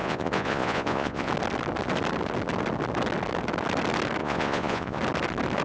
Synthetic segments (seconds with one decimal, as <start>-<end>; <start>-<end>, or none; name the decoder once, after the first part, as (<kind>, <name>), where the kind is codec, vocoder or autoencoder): 0.0-1.3 (vocoder, Vocos); 4.2-5.0